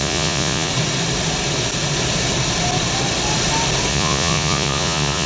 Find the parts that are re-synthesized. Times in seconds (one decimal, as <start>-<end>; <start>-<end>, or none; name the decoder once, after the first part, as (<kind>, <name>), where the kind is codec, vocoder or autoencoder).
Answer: 0.0-0.7 (vocoder, Vocos); 3.9-5.3